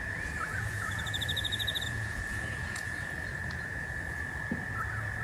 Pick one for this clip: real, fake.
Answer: fake